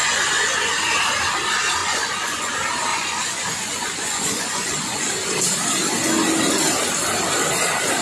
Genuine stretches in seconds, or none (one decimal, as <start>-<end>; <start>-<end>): 0.9-1.8; 2.5-2.9; 5.1-8.0